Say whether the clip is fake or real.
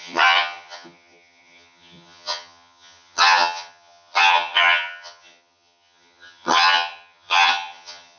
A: fake